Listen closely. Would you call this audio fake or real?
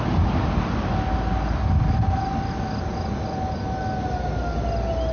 real